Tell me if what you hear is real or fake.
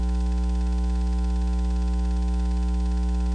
real